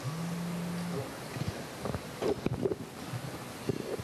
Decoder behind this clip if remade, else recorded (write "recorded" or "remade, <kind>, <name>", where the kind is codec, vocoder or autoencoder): recorded